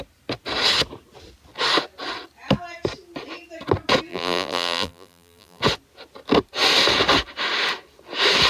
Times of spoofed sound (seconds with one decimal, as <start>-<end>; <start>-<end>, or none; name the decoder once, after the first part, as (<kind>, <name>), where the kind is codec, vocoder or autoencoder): 4.1-5.6 (vocoder, BigVGAN v2)